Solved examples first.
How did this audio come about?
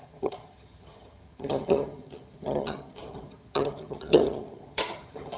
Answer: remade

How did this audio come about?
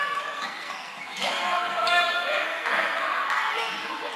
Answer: remade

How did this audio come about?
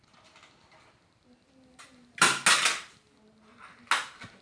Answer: recorded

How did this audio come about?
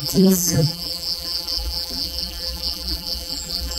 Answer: remade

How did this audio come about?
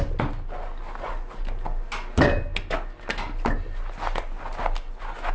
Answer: recorded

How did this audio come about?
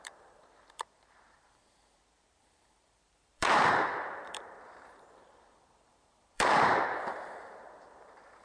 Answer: remade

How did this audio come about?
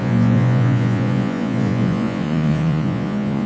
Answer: remade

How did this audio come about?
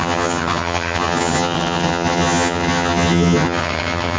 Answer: remade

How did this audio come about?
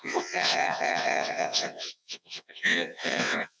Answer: remade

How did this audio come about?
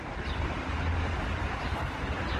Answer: recorded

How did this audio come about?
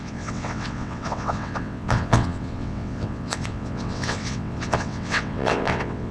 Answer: remade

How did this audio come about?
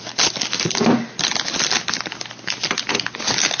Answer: recorded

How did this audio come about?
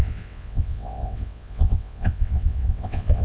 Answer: remade